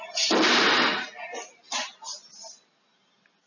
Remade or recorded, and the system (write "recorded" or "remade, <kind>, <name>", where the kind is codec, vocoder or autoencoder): recorded